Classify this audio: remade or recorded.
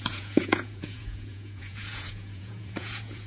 remade